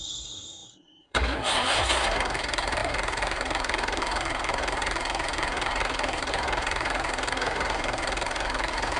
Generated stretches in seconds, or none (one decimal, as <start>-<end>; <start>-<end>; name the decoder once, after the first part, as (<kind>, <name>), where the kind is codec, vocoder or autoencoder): 0.0-9.0 (codec, SNAC)